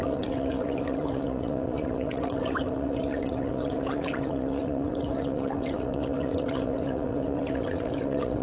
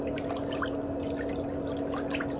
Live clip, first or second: second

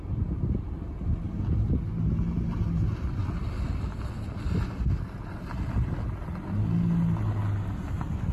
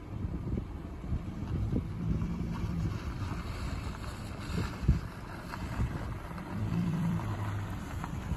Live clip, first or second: first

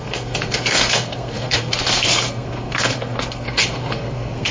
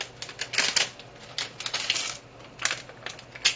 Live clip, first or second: second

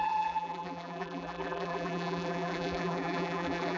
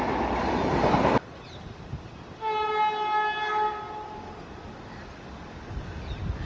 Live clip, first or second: second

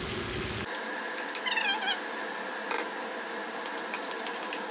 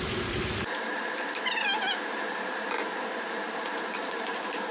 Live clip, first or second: first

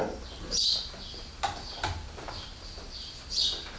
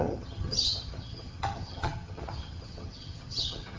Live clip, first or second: first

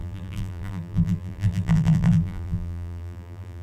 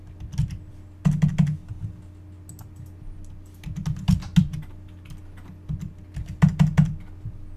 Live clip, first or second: second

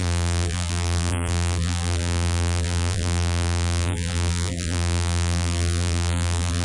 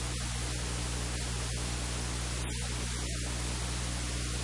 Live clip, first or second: second